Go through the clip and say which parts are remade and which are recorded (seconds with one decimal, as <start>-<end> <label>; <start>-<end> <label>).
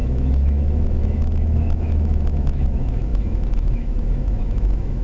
0.0-5.0 remade